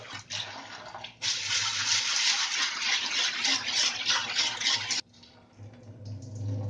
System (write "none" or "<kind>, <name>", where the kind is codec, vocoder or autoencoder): none